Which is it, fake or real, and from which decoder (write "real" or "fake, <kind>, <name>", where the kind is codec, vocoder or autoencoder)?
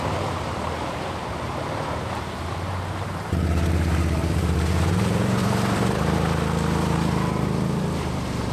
fake, vocoder, BigVGAN v2